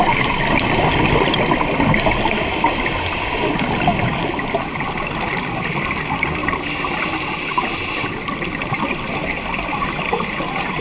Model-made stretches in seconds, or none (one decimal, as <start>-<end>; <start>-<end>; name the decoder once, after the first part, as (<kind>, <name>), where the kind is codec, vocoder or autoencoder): none